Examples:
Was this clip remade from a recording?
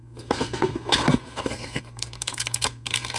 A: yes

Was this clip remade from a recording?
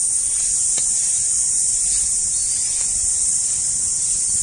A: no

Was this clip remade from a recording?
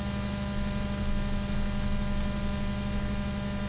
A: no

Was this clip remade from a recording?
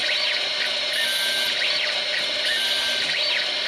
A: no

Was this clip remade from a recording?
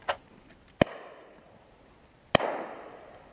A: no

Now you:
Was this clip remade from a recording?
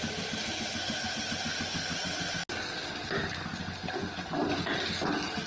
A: no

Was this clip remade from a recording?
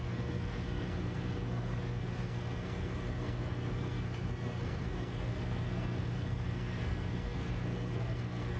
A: yes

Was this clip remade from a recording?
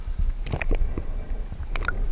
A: no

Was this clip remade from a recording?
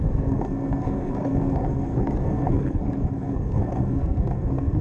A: yes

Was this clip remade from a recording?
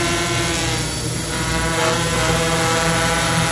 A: no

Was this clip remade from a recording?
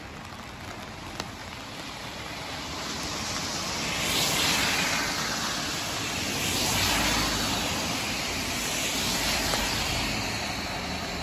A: no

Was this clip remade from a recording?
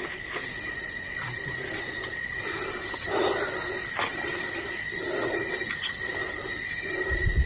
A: no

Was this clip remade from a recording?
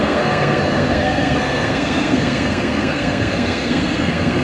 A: yes